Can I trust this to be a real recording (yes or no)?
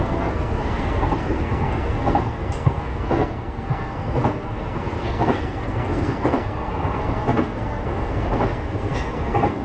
no